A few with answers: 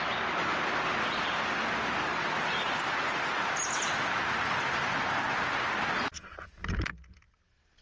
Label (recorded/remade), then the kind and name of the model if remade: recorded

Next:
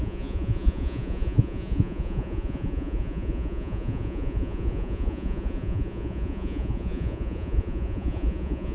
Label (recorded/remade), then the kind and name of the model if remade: remade, vocoder, Vocos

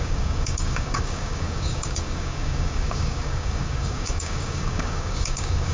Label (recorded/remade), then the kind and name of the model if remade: remade, codec, DAC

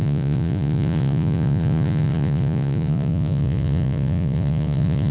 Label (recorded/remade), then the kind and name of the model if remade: remade, vocoder, Vocos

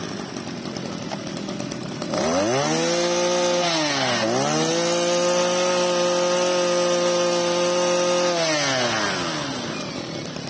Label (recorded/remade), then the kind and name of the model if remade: recorded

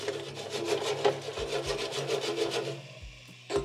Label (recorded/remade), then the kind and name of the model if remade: recorded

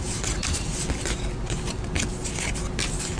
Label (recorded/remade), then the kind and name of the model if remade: recorded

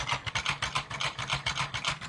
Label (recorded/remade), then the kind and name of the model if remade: recorded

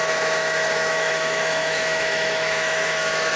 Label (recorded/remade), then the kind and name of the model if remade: remade, autoencoder, DAC-VAE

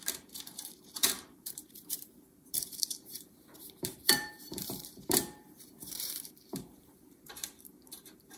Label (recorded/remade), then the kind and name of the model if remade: remade, vocoder, BigVGAN v2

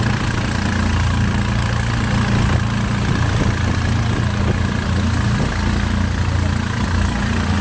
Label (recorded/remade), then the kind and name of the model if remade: recorded